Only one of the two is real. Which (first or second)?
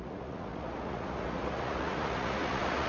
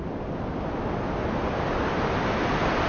second